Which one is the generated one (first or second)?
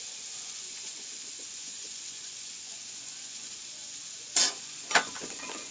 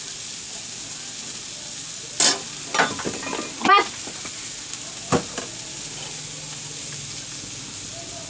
first